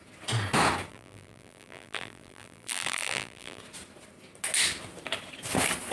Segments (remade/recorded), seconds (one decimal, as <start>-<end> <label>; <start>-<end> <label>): 0.0-0.9 recorded; 0.9-3.6 remade; 3.6-5.9 recorded